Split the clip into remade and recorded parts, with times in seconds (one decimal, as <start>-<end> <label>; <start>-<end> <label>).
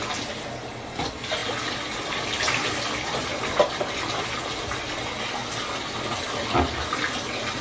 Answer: 0.0-7.6 recorded